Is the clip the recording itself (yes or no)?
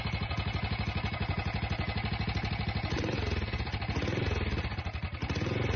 yes